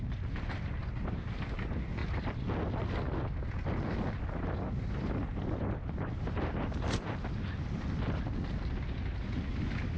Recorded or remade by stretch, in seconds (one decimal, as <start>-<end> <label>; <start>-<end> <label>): 0.0-10.0 recorded